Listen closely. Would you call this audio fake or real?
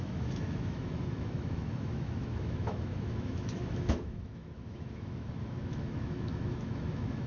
fake